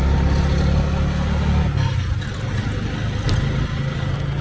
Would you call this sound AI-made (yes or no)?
no